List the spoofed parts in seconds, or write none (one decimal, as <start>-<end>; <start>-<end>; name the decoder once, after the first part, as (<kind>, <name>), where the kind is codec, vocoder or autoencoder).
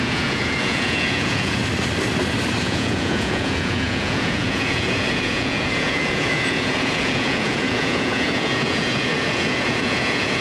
0.0-1.6 (vocoder, Vocos); 2.6-10.4